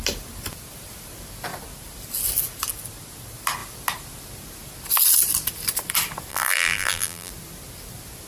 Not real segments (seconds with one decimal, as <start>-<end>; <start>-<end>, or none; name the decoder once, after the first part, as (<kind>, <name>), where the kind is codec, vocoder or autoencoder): 6.3-7.3 (vocoder, BigVGAN v2)